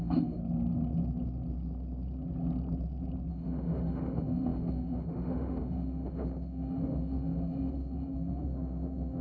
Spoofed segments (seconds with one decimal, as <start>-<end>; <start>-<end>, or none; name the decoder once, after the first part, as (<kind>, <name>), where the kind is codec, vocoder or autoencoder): 0.0-0.4 (autoencoder, DAC-VAE); 3.3-9.2